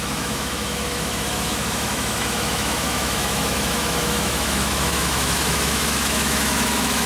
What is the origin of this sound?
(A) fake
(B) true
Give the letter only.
A